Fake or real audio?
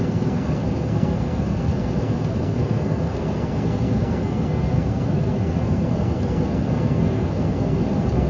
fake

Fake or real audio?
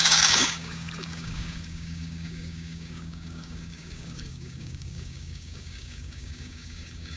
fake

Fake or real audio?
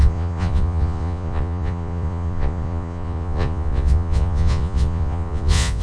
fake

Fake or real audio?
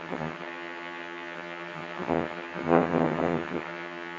fake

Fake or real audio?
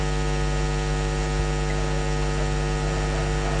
real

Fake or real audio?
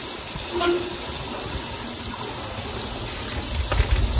real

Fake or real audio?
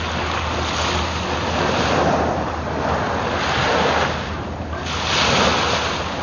real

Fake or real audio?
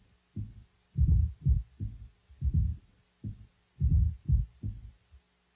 real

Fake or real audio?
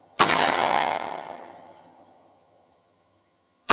fake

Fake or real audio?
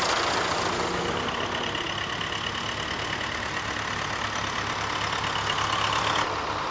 real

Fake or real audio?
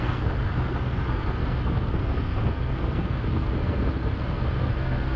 fake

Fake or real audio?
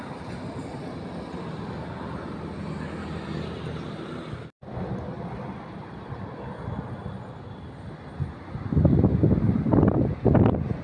real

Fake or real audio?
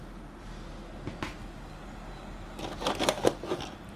real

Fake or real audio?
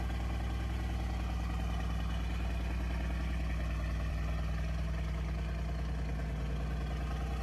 real